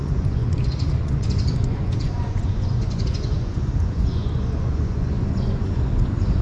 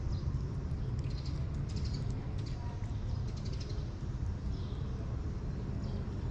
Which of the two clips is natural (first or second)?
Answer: second